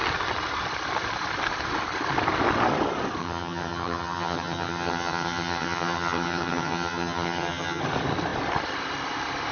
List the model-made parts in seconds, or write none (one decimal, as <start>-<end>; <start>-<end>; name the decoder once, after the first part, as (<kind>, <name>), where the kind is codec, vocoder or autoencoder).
3.2-7.8 (vocoder, HiFi-GAN)

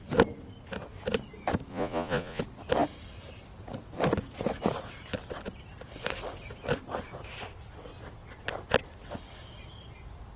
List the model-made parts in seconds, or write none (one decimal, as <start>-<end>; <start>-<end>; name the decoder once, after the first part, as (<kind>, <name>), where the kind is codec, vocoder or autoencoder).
1.7-2.4 (vocoder, Vocos)

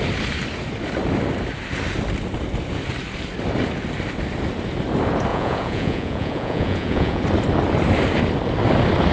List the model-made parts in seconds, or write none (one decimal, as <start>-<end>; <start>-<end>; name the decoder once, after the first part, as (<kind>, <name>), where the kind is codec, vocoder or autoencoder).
5.3-7.2 (vocoder, Vocos)